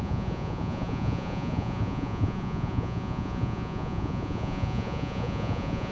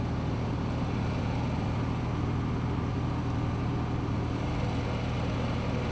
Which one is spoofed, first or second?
first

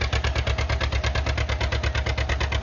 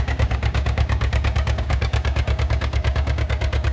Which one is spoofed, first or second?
second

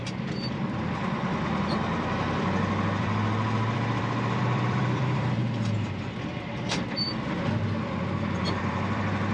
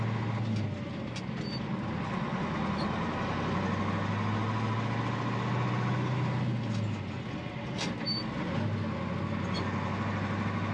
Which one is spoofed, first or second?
first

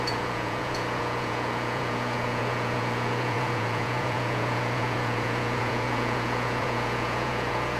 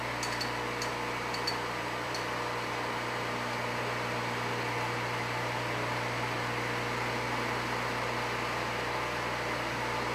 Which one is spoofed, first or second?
first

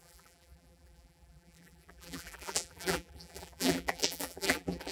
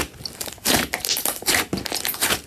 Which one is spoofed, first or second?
first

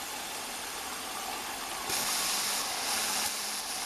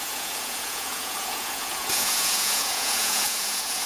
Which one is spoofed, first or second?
second